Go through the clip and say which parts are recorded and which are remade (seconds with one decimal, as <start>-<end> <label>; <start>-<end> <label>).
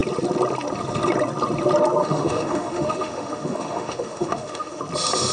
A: 0.0-2.0 recorded; 2.0-4.8 remade; 4.8-5.3 recorded